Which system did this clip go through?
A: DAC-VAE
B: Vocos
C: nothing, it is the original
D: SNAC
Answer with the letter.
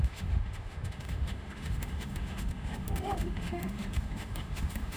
A